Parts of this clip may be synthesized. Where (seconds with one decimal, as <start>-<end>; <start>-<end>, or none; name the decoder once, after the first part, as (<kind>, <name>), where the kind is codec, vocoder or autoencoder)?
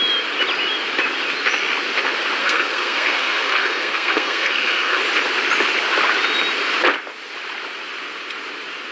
2.4-5.0 (codec, SNAC)